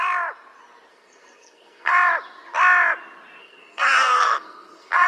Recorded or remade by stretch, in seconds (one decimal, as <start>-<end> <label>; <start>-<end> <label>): 0.0-0.9 recorded; 0.9-1.9 remade; 1.9-3.4 recorded; 3.4-5.1 remade

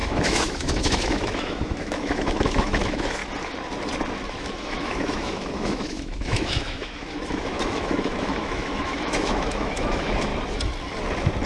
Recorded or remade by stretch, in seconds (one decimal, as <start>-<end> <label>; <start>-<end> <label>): 0.0-3.2 remade; 3.2-4.3 recorded; 4.3-10.3 remade; 10.3-11.5 recorded

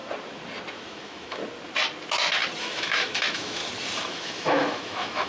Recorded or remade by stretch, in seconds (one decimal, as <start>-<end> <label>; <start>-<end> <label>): 0.0-0.7 recorded; 0.7-1.4 remade; 1.4-2.6 recorded; 2.6-3.6 remade; 3.6-4.1 recorded; 4.1-5.3 remade

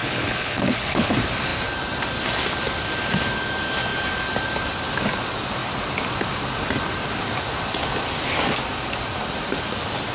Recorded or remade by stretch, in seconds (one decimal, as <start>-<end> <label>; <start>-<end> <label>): 0.0-1.1 remade; 1.1-10.1 recorded

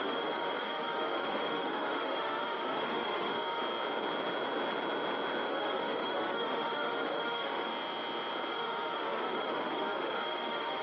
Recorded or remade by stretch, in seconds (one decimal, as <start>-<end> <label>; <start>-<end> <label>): 0.0-3.6 remade; 3.6-5.5 recorded; 5.5-7.7 remade; 7.7-8.5 recorded; 8.5-10.8 remade

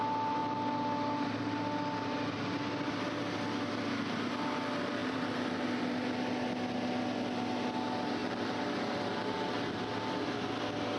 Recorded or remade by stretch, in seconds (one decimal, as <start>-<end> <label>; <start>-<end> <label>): 0.0-5.0 recorded; 5.0-5.8 remade; 5.8-8.2 recorded; 8.2-9.5 remade; 9.5-11.0 recorded

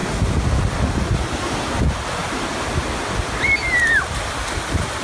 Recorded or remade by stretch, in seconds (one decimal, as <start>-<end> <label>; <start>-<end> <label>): 0.0-5.0 recorded

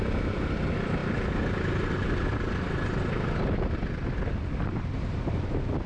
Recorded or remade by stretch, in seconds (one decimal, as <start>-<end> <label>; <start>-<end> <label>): 0.0-5.9 recorded